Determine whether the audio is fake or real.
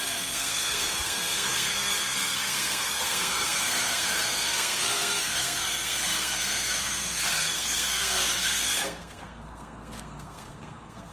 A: fake